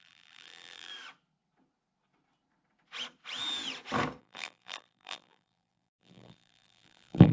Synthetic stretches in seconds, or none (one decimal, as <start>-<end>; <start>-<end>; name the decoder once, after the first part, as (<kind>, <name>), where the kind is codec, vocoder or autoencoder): 0.0-0.9 (vocoder, BigVGAN v2); 4.2-7.3